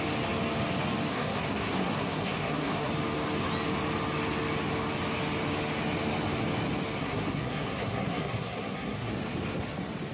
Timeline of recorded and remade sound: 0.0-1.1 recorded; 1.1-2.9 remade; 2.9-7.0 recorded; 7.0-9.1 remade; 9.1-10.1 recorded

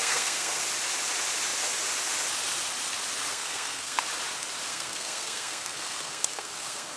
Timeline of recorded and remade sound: 0.0-0.6 remade; 0.6-3.3 recorded; 3.3-4.0 remade; 4.0-4.7 recorded; 4.7-7.0 remade

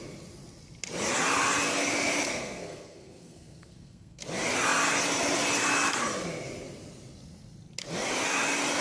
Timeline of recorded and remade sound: 0.0-2.3 recorded; 2.3-4.2 remade; 4.2-8.8 recorded

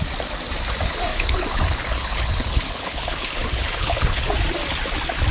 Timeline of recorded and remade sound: 0.0-1.1 recorded; 1.1-4.3 remade; 4.3-5.3 recorded

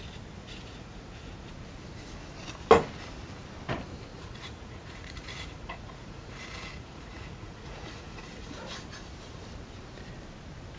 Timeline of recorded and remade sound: 0.0-0.4 recorded; 0.4-1.5 remade; 1.5-4.1 recorded; 4.1-8.5 remade; 8.5-10.8 recorded

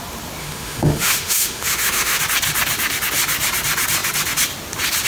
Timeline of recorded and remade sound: 0.0-0.4 recorded; 0.4-2.2 remade; 2.2-5.1 recorded

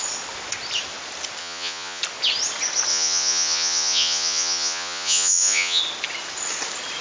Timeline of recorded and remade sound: 0.0-1.4 recorded; 1.4-2.0 remade; 2.0-2.9 recorded; 2.9-5.8 remade; 5.8-7.0 recorded